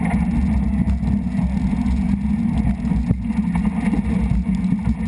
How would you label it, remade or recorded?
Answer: recorded